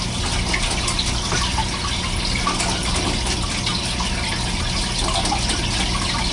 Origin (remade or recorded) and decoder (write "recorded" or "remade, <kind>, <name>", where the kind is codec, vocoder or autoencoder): recorded